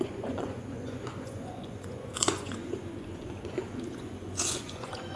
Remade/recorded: remade